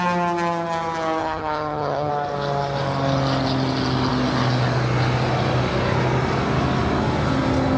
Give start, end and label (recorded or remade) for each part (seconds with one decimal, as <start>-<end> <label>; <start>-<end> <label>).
0.0-1.2 recorded; 1.2-2.1 remade; 2.1-7.8 recorded